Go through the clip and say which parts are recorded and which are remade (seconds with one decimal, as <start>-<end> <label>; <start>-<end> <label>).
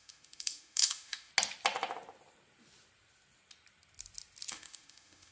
0.0-1.3 remade; 1.3-4.5 recorded; 4.5-5.3 remade